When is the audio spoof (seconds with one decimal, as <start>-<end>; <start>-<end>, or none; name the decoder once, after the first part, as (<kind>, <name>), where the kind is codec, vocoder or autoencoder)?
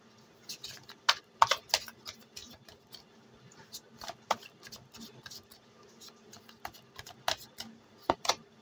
2.4-2.9 (vocoder, BigVGAN v2)